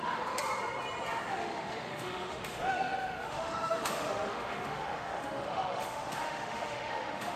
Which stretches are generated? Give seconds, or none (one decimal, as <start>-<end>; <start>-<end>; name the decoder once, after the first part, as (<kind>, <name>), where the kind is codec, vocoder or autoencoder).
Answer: 0.0-0.4 (autoencoder, DAC-VAE); 1.3-7.4

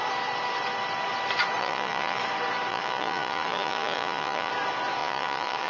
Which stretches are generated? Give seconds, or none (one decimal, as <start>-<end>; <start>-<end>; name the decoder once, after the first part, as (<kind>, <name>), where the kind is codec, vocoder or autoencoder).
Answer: 1.6-2.2 (vocoder, Vocos); 2.7-4.5; 5.0-5.7

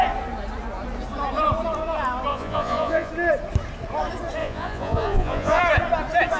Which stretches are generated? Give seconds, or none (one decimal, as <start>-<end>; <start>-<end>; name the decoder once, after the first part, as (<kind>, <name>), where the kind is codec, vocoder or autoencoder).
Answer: 2.3-3.1 (vocoder, Vocos); 4.4-5.6

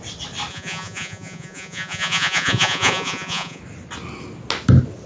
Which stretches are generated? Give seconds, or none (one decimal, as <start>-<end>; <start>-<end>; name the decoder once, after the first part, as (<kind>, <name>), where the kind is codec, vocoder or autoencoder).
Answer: 0.5-3.6 (vocoder, Vocos)

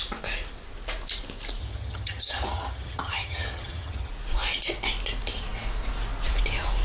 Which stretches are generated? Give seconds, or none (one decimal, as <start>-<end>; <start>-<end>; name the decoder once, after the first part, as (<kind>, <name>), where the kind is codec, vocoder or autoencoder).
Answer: 1.6-4.1 (vocoder, HiFi-GAN)

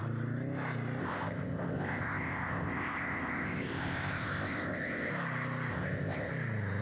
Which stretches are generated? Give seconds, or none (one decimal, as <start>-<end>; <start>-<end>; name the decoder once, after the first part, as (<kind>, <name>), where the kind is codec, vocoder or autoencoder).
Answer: 1.0-5.1 (codec, ZipCodec); 5.7-6.3

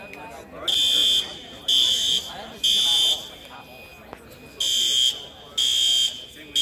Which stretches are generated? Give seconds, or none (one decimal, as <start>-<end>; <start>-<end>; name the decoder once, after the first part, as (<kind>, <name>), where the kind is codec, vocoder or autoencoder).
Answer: none